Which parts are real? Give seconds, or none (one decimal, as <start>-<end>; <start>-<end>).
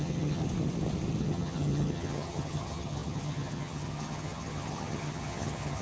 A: 0.4-1.2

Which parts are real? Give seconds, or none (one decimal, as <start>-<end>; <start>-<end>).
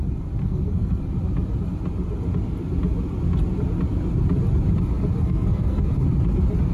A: 0.0-0.4; 1.0-5.2; 5.8-6.7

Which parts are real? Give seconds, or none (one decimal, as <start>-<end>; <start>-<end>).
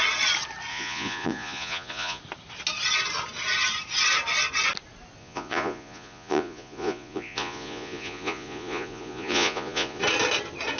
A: 0.0-0.7; 2.2-5.2; 10.0-10.8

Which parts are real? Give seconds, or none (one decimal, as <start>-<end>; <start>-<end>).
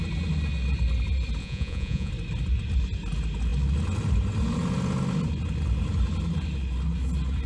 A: 0.0-1.4; 2.1-7.5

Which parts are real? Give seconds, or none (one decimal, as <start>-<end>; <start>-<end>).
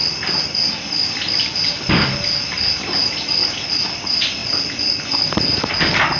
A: 0.0-6.2